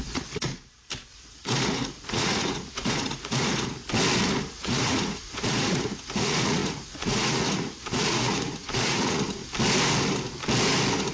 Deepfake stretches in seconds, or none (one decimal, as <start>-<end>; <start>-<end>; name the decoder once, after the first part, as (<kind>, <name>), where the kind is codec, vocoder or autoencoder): 0.0-0.5 (vocoder, Vocos); 1.1-3.8; 4.5-9.4

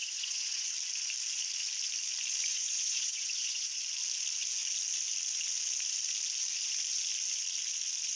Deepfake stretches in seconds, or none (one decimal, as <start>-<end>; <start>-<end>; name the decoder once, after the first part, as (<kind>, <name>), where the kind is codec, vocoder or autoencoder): 0.0-0.7 (vocoder, Vocos); 2.5-3.8

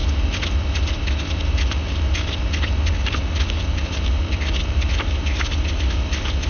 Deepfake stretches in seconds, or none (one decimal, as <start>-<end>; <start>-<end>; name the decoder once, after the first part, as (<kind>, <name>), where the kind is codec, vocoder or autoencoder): none

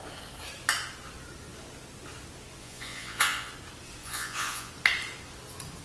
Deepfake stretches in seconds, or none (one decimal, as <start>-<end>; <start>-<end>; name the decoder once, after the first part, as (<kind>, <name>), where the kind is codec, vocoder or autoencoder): 2.6-3.5 (vocoder, Vocos); 4.0-4.7

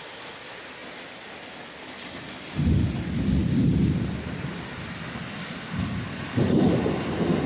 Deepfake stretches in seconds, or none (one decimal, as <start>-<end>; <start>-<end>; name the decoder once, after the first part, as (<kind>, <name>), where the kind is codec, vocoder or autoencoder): none

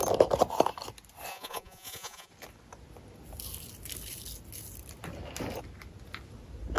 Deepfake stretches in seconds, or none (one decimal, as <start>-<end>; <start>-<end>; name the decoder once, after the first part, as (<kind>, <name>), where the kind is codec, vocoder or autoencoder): 1.3-2.3 (vocoder, Vocos)

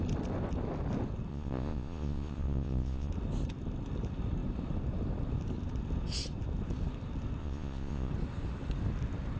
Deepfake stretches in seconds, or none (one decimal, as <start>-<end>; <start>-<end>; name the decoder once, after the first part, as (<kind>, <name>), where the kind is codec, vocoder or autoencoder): 1.3-3.1 (vocoder, Vocos); 7.4-8.1